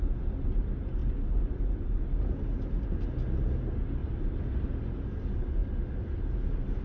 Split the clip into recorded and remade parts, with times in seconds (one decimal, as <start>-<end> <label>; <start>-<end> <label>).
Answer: 0.0-1.0 recorded; 1.0-2.1 remade; 2.1-4.0 recorded; 4.0-4.7 remade; 4.7-5.6 recorded; 5.6-6.3 remade; 6.3-6.8 recorded